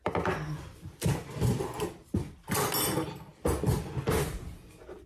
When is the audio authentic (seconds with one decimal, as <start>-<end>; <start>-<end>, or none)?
0.0-5.1